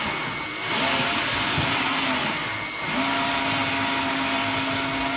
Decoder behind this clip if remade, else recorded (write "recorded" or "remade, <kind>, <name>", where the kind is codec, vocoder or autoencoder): recorded